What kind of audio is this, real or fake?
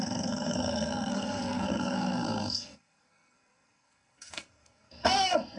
fake